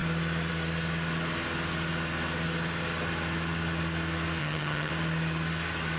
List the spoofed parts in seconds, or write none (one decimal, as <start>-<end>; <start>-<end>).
4.4-4.9